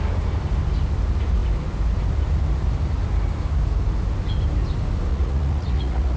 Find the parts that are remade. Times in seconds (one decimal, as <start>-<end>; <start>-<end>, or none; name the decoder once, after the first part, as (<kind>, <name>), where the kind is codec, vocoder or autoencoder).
5.1-6.2 (vocoder, Vocos)